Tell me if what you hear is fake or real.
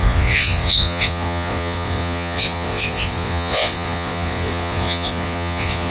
fake